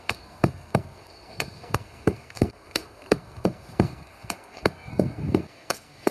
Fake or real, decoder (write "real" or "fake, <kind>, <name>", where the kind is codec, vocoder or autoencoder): fake, codec, SNAC